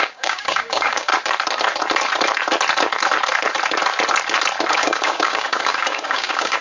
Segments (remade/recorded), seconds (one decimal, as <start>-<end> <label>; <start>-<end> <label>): 0.0-1.1 remade; 1.1-4.7 recorded; 4.7-6.6 remade